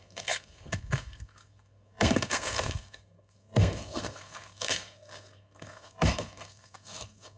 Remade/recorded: remade